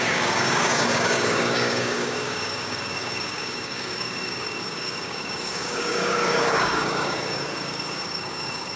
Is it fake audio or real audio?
fake